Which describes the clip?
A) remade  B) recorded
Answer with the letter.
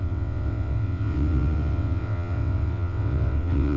A